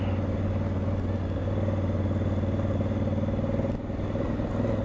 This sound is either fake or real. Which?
real